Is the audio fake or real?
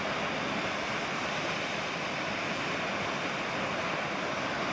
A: real